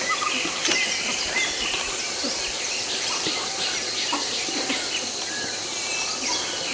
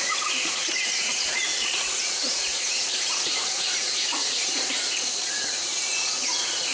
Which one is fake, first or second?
second